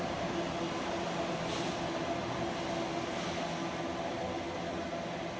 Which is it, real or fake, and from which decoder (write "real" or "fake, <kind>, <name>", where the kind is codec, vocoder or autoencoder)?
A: real